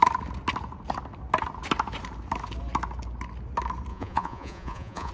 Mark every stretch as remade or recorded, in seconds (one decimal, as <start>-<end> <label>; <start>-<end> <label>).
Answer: 0.0-3.9 recorded; 3.9-5.1 remade